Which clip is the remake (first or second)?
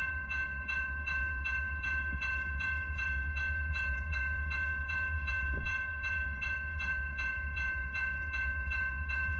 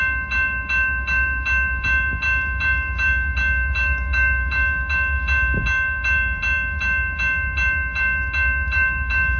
first